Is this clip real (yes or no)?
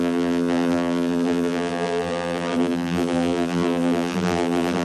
no